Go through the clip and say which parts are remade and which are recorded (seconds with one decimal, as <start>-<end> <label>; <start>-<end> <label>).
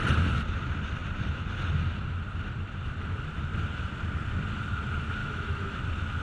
0.0-5.2 recorded; 5.2-5.8 remade; 5.8-6.2 recorded